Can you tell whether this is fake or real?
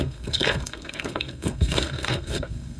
fake